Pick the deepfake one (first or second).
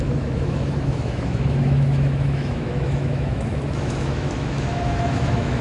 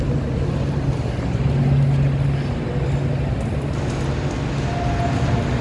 first